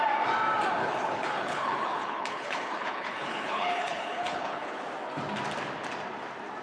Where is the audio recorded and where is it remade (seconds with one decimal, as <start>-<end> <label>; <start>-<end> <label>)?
0.0-0.8 recorded; 0.8-4.8 remade; 4.8-6.6 recorded

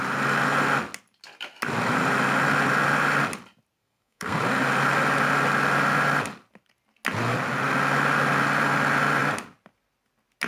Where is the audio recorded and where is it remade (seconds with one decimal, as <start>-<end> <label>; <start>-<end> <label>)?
0.0-3.8 recorded; 3.8-4.4 remade; 4.4-10.5 recorded

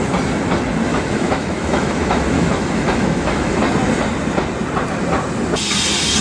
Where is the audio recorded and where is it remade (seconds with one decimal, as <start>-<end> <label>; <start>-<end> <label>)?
0.0-0.9 recorded; 0.9-3.6 remade; 3.6-6.2 recorded

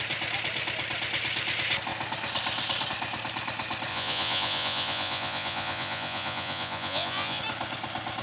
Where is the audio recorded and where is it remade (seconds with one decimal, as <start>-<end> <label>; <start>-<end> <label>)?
0.0-3.9 recorded; 3.9-7.4 remade; 7.4-8.2 recorded

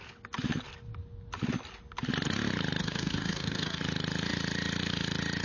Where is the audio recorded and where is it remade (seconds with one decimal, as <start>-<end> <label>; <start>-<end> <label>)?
0.0-2.8 recorded; 2.8-3.8 remade; 3.8-5.4 recorded

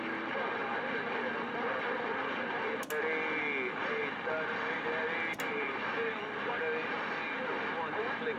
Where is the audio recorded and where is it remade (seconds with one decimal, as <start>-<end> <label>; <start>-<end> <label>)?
0.0-8.4 recorded

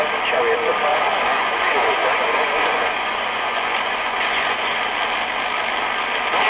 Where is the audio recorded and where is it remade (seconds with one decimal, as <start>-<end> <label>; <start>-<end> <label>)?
0.0-0.9 recorded; 0.9-4.8 remade; 4.8-6.5 recorded